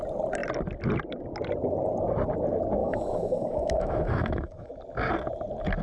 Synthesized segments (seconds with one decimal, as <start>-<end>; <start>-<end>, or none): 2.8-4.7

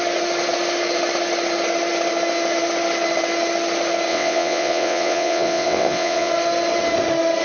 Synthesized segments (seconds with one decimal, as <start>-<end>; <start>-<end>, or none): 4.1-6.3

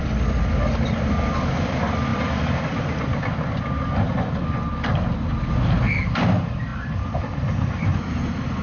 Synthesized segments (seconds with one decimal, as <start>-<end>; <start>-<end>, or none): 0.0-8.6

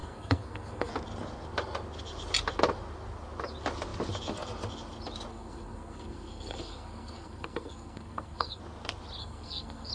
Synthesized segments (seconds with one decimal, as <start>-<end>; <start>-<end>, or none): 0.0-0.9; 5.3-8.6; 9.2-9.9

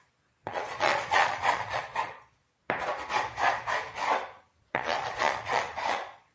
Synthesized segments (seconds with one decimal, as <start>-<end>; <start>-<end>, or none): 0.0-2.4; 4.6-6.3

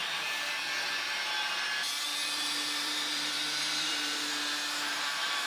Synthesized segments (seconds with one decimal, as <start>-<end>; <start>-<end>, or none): 0.0-0.5; 2.1-5.5